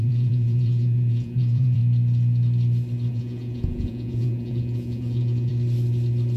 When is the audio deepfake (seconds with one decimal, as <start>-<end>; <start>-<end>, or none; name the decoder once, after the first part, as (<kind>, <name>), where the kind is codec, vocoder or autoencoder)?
0.0-1.8 (vocoder, Vocos); 3.1-5.5